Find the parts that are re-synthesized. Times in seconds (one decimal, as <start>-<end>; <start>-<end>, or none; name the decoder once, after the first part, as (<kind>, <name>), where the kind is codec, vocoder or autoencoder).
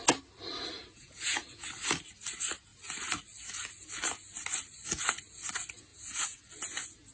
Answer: 0.8-1.7 (vocoder, Vocos); 5.9-6.5